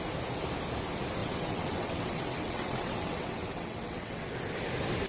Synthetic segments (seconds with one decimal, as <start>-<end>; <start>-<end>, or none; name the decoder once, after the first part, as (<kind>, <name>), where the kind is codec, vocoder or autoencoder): 1.2-4.3 (vocoder, WaveNeXt)